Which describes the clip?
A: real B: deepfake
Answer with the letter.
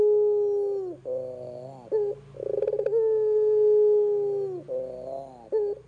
A